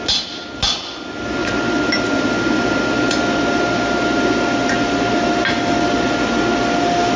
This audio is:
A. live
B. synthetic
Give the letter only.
A